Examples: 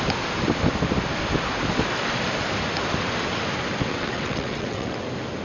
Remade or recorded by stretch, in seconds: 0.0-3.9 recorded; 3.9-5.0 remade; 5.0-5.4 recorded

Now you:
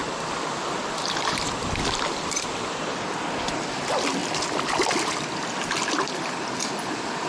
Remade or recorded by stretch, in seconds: 0.0-7.3 recorded